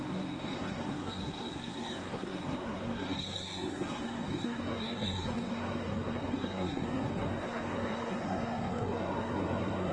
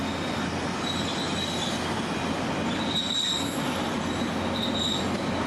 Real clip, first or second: second